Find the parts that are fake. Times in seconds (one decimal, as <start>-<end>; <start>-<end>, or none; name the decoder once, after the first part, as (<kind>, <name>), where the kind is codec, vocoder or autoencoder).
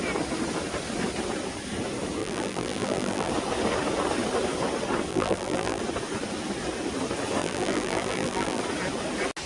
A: 2.2-3.3 (vocoder, BigVGAN v2); 5.1-5.8; 7.4-8.6